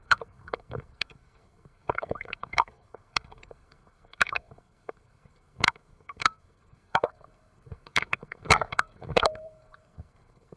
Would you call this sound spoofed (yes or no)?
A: yes